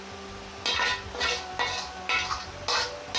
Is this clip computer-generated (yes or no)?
no